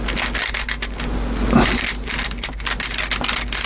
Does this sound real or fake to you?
real